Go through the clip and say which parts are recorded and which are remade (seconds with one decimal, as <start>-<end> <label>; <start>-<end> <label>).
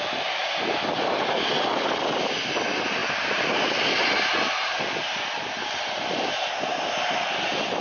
0.0-7.8 recorded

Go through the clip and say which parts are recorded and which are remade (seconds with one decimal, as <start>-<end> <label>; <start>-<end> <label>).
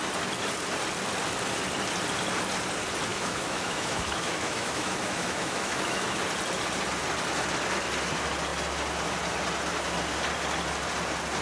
0.0-3.1 recorded; 3.1-6.2 remade; 6.2-11.4 recorded